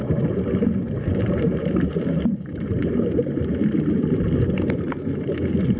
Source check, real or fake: fake